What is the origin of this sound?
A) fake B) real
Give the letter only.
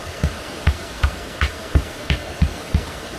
A